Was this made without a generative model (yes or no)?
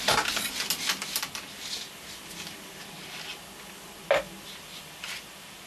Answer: yes